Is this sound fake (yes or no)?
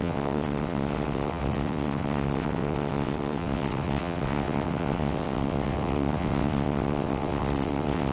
yes